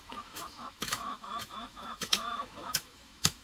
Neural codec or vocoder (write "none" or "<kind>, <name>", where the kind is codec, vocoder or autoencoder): autoencoder, DAC-VAE